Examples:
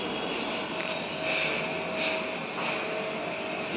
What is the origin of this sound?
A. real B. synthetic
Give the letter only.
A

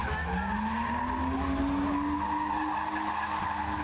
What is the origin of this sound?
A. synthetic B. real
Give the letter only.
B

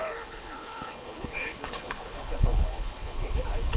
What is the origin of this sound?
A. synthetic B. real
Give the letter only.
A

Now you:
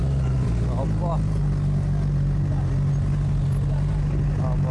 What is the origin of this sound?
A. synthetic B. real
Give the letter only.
B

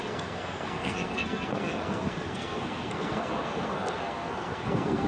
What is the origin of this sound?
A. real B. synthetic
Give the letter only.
B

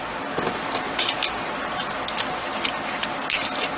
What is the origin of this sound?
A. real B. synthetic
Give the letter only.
A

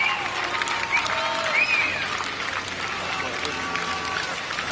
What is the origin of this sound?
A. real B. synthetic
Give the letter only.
A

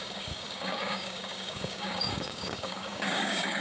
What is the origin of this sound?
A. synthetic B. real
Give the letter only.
A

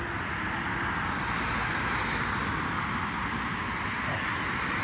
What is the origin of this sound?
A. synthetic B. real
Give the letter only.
B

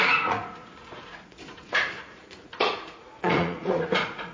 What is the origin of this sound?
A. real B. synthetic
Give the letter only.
B